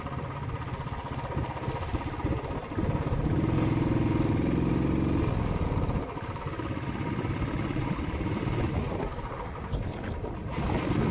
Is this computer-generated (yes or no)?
no